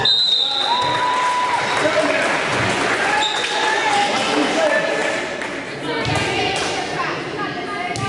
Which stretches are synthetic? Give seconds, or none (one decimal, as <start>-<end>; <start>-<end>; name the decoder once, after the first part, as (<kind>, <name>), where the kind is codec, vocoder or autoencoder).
2.5-4.1 (vocoder, Vocos)